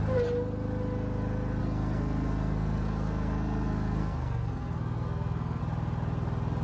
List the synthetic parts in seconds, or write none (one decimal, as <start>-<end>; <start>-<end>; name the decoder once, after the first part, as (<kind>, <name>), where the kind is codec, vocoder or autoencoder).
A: 1.6-5.6 (codec, SNAC)